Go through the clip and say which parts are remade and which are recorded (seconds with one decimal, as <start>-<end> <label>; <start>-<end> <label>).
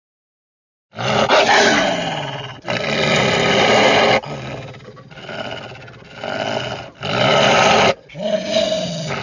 0.0-9.2 recorded